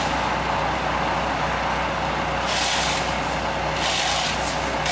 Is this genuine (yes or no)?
yes